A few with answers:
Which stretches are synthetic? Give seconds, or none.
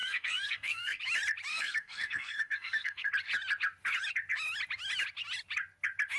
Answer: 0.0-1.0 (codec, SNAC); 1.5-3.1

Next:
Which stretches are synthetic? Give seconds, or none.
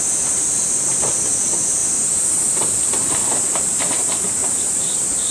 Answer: 1.8-2.6 (vocoder, BigVGAN v2); 3.2-3.8; 4.4-5.3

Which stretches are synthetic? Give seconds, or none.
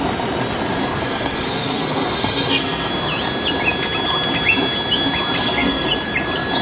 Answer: 1.0-2.9 (codec, SNAC); 5.4-5.9